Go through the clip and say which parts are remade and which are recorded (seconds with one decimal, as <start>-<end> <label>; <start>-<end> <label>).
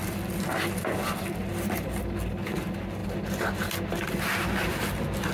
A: 0.0-5.3 recorded